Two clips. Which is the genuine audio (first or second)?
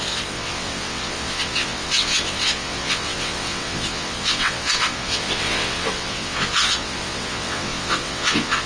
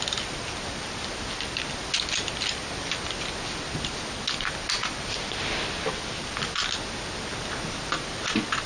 second